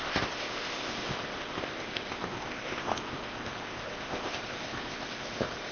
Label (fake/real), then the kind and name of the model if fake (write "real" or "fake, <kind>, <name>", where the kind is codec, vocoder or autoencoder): fake, codec, ZipCodec